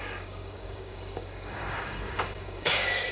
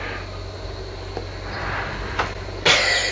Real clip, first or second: second